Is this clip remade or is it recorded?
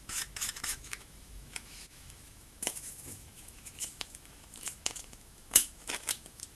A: remade